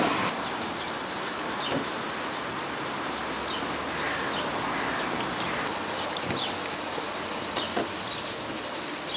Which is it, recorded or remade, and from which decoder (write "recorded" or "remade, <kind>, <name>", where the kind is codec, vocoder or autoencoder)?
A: recorded